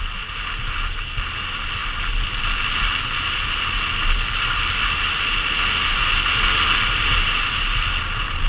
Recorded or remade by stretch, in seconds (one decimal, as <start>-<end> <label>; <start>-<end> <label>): 0.0-8.5 recorded

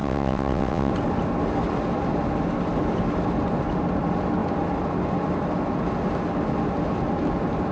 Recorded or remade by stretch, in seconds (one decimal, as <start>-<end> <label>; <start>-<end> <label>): 0.0-0.9 remade; 0.9-7.7 recorded